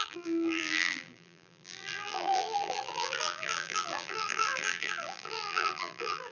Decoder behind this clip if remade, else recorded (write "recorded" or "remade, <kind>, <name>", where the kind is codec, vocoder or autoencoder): remade, vocoder, BigVGAN v2